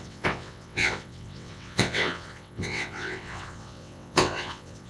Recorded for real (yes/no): no